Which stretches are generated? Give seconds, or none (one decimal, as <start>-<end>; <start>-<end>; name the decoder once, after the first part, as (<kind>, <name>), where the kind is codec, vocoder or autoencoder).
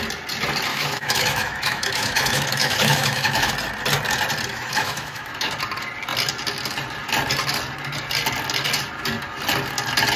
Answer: 0.7-3.5 (autoencoder, DAC-VAE); 4.5-5.5